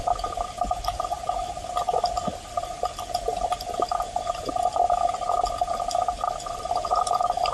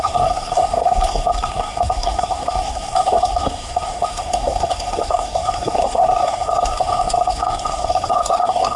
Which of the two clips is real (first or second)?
first